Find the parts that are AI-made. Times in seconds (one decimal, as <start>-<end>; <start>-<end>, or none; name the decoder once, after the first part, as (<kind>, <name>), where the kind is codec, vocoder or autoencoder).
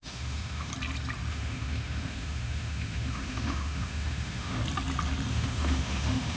0.0-0.7 (autoencoder, DAC-VAE); 1.3-4.6; 5.3-6.4